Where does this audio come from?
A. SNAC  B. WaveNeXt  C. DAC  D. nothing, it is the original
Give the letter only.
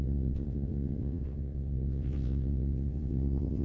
B